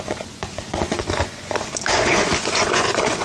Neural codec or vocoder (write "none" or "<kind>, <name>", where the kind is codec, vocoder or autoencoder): vocoder, Vocos